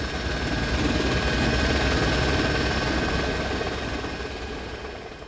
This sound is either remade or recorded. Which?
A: recorded